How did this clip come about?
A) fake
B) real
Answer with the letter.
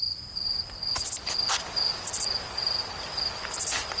B